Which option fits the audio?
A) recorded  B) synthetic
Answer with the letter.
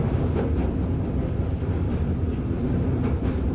A